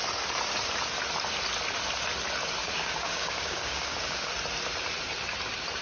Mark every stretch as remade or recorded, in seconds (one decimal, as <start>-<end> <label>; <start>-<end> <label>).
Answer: 0.0-2.6 recorded; 2.6-4.3 remade; 4.3-5.8 recorded